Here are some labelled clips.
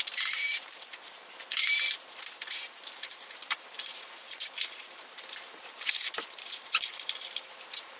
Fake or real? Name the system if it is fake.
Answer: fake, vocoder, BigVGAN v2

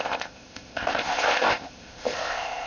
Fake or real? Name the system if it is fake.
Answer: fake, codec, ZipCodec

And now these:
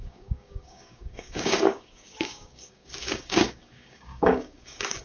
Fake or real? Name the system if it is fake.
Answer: fake, codec, DAC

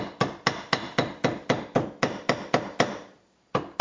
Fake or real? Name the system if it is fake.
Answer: real